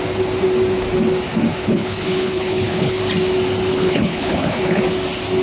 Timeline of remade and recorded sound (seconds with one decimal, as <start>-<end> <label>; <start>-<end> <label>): 0.0-1.6 recorded; 1.6-3.0 remade; 3.0-3.7 recorded; 3.7-4.8 remade; 4.8-5.4 recorded